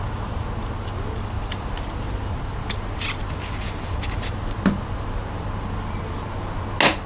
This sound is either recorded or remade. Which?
recorded